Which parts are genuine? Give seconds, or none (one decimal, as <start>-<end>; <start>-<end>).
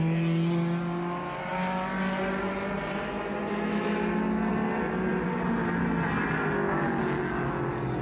0.0-8.0